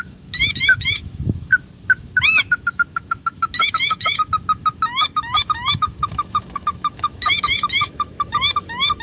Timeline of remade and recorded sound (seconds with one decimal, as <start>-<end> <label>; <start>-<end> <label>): 0.0-1.5 remade; 1.5-2.0 recorded; 2.0-9.0 remade